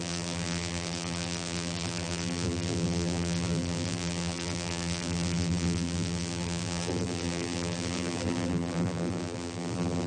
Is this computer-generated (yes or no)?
yes